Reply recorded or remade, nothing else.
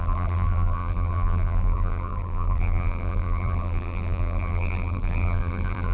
remade